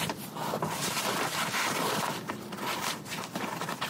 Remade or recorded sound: recorded